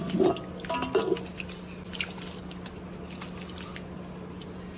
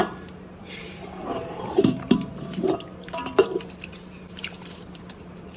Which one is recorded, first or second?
first